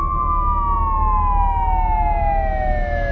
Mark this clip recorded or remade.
recorded